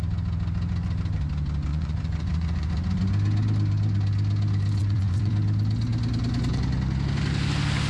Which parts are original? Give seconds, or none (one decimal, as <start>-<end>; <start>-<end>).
0.0-1.7; 3.0-4.8; 5.3-7.9